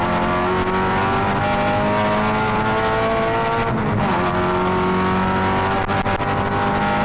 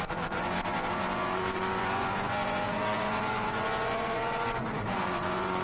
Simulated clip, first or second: second